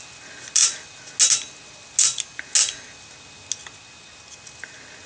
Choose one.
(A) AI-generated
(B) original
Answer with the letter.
B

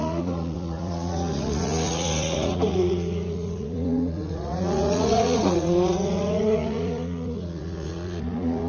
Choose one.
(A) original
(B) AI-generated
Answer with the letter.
B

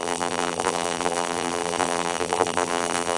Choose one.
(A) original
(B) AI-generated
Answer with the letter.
B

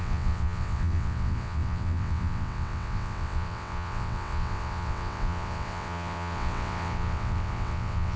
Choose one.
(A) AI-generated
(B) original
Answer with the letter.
A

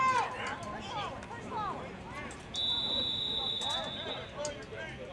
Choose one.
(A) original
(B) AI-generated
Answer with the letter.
A